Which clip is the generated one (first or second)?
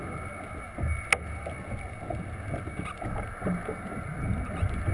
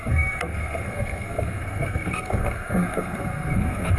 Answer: second